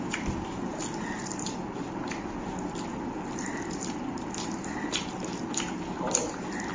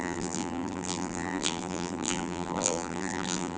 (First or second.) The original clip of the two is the first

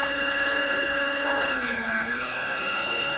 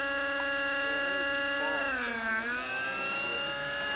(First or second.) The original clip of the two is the second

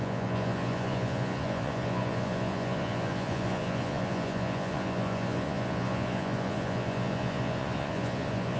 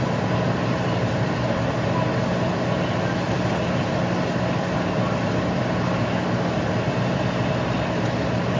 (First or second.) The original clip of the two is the second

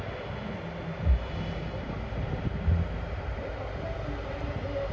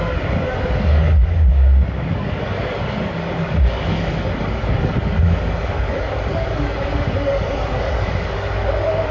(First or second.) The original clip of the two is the first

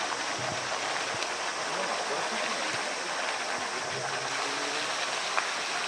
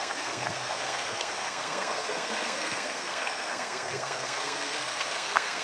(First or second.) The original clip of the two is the first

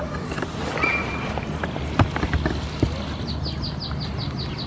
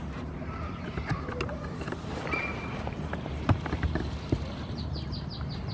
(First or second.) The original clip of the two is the first